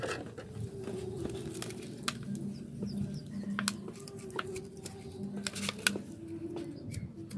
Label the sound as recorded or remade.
recorded